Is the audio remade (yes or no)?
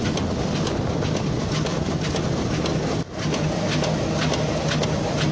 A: no